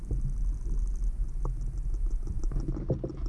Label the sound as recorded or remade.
recorded